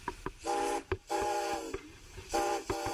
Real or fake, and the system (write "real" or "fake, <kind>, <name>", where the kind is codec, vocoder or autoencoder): fake, vocoder, BigVGAN v2